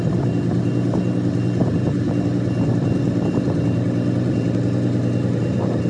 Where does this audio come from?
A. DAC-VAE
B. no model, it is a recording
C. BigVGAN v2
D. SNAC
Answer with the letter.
B